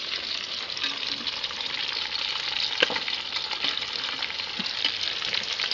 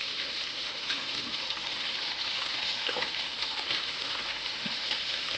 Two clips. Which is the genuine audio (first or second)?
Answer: first